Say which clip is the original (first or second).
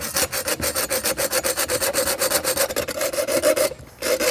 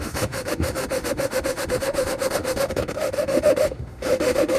first